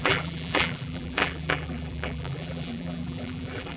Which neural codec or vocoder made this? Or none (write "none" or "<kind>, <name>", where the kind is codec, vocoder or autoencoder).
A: vocoder, BigVGAN v2